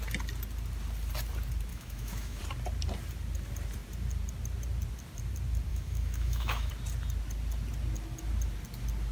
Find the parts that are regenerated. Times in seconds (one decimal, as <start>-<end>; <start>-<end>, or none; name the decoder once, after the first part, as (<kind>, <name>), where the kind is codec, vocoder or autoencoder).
1.7-2.4 (autoencoder, DAC-VAE); 5.7-6.7